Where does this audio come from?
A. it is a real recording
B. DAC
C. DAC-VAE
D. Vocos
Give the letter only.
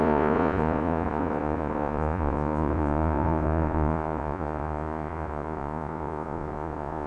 D